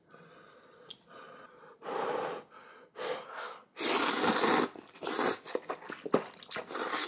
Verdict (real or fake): real